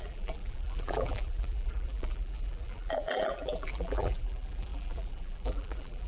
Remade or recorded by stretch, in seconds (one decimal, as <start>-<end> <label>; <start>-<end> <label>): 0.0-6.1 remade